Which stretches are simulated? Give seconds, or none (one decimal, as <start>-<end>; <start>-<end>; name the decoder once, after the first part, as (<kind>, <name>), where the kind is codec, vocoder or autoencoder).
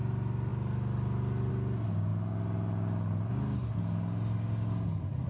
none